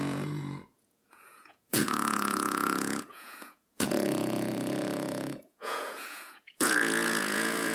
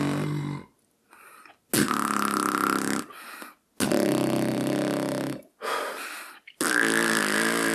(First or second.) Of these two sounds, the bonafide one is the second